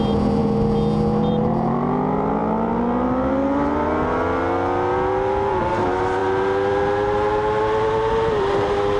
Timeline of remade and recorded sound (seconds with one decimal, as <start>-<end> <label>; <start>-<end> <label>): 0.0-9.0 recorded

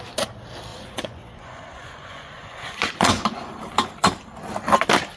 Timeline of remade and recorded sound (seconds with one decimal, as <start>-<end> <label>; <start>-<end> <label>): 0.0-0.7 recorded; 0.7-3.6 remade; 3.6-5.2 recorded